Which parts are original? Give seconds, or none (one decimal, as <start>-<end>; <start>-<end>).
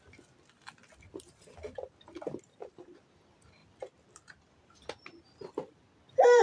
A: 0.0-6.4